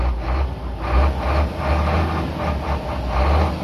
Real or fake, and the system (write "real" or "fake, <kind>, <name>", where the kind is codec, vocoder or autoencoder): real